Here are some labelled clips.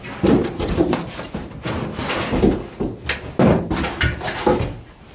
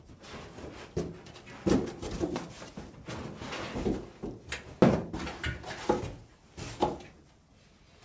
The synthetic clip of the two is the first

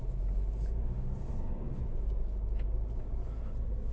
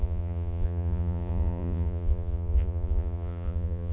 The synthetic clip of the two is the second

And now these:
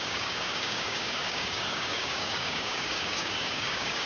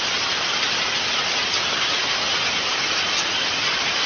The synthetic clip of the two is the first